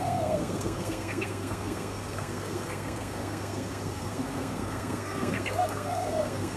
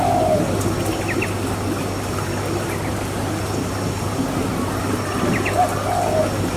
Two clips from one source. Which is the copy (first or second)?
first